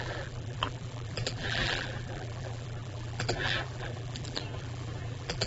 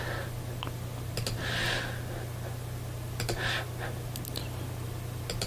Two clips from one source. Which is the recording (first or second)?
second